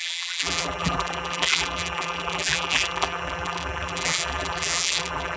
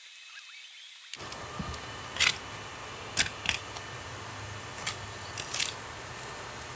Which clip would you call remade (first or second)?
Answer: first